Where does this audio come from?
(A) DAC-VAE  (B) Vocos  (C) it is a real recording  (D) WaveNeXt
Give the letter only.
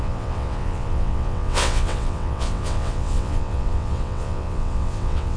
D